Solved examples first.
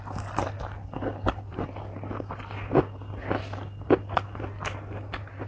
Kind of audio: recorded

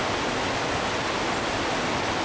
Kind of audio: recorded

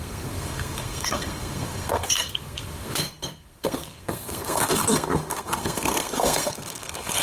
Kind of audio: remade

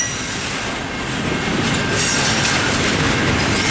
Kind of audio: recorded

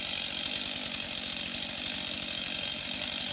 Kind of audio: recorded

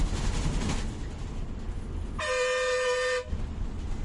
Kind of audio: recorded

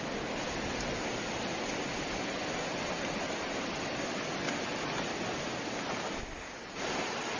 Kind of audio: recorded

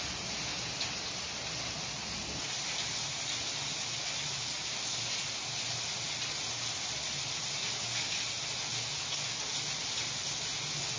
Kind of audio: recorded